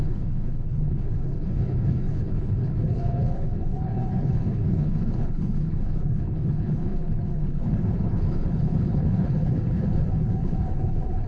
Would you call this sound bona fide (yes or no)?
no